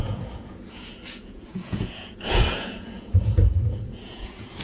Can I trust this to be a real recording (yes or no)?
no